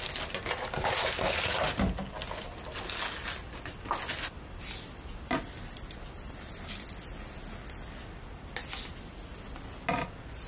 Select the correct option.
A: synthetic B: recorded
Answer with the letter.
B